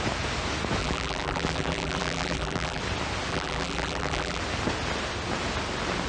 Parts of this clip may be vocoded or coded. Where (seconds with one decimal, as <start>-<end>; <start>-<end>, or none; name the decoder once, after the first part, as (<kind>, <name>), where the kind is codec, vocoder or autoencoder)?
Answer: 0.8-2.8 (vocoder, BigVGAN v2); 3.3-4.4